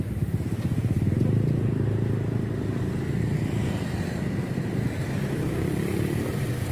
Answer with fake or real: fake